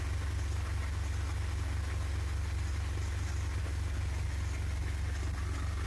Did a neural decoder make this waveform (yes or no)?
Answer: no